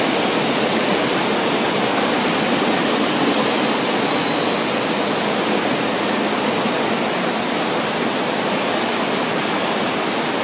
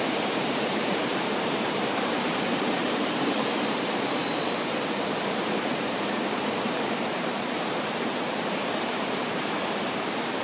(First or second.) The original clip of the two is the first